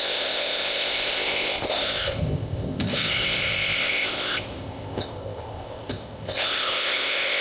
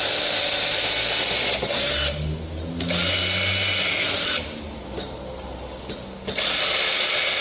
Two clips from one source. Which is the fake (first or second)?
first